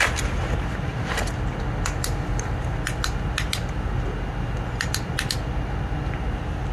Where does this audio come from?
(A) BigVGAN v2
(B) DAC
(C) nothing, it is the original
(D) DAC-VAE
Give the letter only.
C